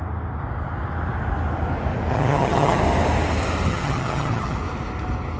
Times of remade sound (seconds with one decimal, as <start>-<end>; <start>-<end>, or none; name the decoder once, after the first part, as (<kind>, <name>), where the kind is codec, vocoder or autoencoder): 2.1-2.8 (vocoder, HiFi-GAN); 3.7-4.6